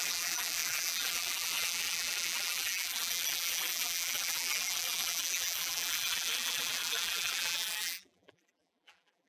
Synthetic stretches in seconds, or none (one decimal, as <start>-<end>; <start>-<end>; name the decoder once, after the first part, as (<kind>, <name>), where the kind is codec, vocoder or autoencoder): 0.0-9.3 (vocoder, BigVGAN v2)